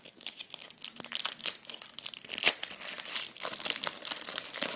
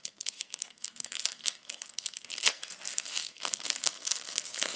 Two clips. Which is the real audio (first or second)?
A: first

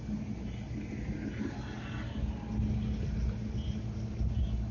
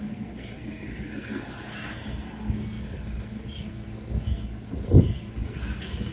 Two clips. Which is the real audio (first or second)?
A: first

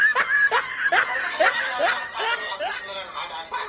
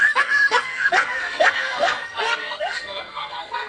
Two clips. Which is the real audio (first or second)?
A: first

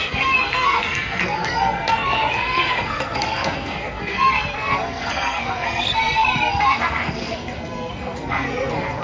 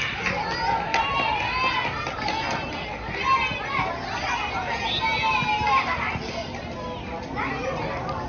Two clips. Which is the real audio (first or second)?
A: second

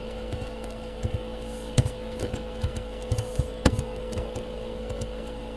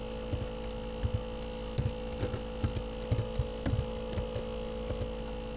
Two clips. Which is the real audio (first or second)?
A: second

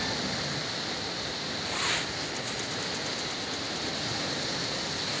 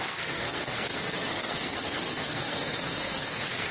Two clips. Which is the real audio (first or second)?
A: first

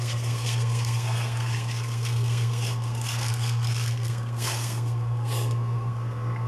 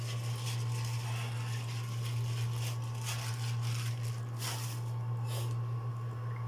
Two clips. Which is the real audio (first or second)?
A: second